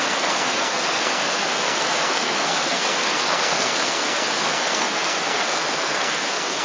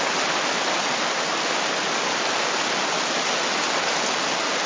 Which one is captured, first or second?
second